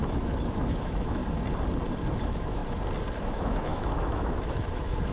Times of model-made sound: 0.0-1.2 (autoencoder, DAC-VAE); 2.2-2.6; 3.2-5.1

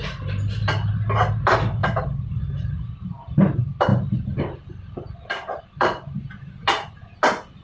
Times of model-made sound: 1.8-2.4 (vocoder, BigVGAN v2)

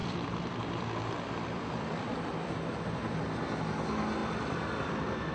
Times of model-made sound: 0.0-3.2 (vocoder, BigVGAN v2); 4.2-5.3

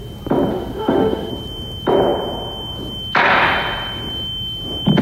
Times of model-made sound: 0.5-1.3 (autoencoder, DAC-VAE)

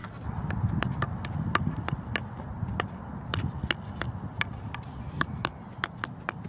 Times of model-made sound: none

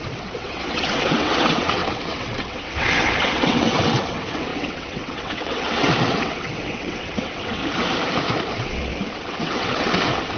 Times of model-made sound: 0.0-7.6 (vocoder, WaveNeXt); 8.5-10.4

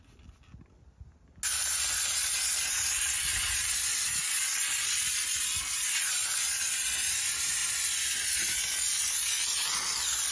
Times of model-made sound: none

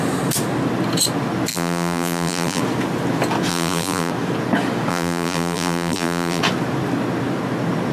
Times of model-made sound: 1.5-2.6 (vocoder, BigVGAN v2); 3.5-4.1; 4.9-6.4